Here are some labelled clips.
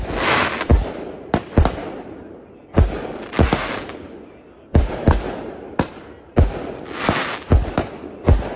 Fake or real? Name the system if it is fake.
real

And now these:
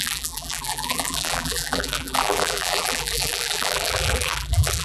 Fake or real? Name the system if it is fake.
fake, vocoder, BigVGAN v2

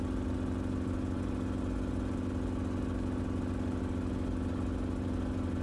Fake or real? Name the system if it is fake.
real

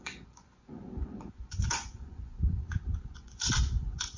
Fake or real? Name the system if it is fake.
fake, vocoder, Vocos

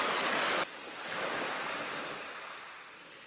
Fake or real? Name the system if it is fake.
real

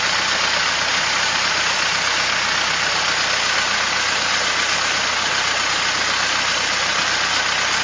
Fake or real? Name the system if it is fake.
real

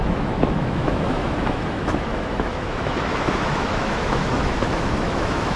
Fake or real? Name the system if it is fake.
fake, autoencoder, DAC-VAE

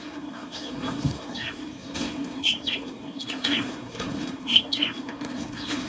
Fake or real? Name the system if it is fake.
fake, codec, SNAC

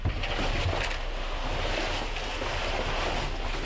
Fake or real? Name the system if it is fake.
real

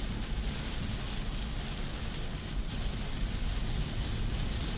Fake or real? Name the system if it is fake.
real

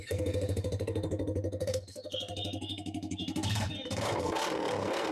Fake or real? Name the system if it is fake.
fake, codec, SNAC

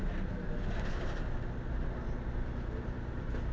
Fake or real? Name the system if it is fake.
real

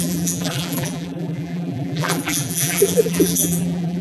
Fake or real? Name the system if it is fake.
fake, vocoder, BigVGAN v2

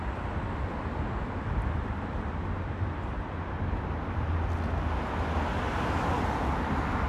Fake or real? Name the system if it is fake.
real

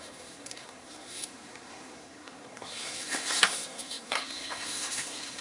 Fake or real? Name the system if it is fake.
fake, codec, SNAC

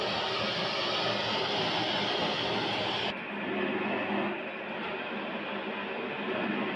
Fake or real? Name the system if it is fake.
real